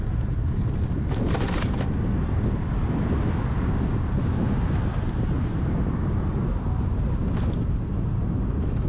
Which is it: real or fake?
real